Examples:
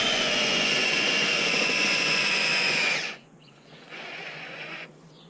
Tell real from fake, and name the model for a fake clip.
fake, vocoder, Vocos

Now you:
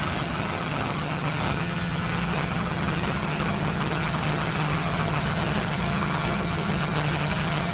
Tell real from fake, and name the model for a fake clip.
fake, vocoder, HiFi-GAN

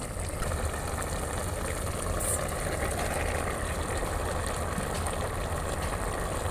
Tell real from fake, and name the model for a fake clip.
real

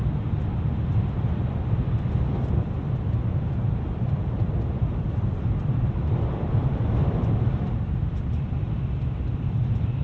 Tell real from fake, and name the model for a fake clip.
fake, vocoder, BigVGAN v2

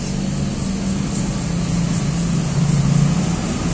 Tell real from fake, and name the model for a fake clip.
real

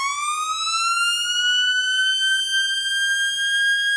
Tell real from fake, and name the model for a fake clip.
real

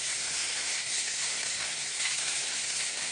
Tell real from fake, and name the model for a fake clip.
fake, codec, SNAC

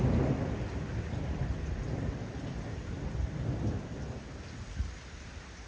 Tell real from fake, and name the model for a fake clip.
real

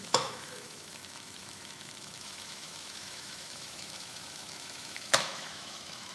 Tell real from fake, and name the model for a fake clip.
fake, autoencoder, DAC-VAE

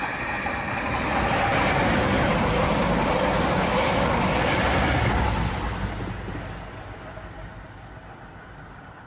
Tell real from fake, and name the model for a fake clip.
real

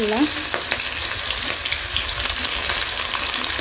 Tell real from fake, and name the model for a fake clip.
real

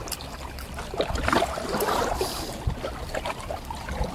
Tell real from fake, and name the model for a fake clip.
real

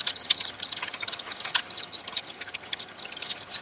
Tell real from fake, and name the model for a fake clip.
fake, vocoder, HiFi-GAN